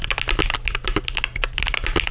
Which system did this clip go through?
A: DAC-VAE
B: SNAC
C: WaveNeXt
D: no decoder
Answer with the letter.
D